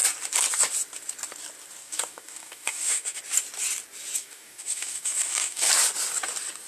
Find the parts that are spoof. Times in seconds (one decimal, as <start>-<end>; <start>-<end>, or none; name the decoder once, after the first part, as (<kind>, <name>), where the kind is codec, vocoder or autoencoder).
1.8-3.2 (codec, DAC); 4.2-5.7